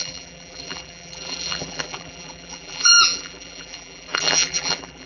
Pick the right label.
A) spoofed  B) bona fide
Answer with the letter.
A